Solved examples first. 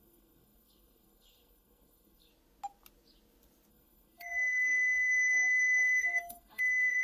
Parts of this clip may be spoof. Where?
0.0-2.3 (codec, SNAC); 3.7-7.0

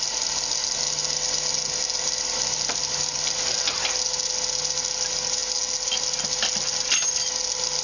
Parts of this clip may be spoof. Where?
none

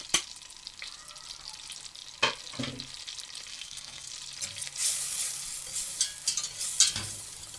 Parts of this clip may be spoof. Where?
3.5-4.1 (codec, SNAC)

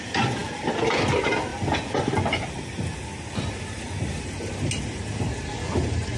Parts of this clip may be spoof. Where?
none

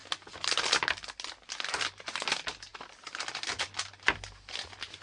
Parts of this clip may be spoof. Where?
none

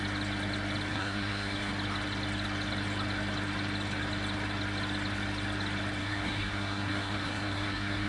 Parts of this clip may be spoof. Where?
0.9-1.7 (codec, SNAC); 6.0-8.1